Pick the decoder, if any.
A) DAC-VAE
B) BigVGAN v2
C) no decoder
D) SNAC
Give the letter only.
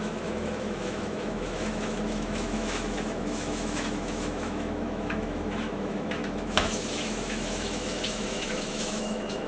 A